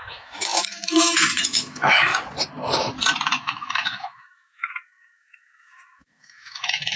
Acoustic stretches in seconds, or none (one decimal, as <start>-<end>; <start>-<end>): 2.1-3.4